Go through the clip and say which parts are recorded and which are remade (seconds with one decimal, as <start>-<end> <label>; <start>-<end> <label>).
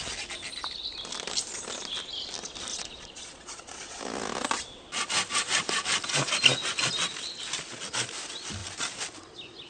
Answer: 0.0-2.7 recorded; 2.7-4.0 remade; 4.0-9.7 recorded